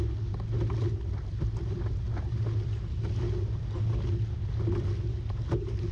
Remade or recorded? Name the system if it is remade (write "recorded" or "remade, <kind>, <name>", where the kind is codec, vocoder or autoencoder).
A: recorded